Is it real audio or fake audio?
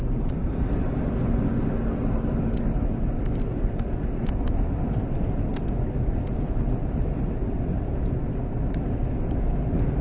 real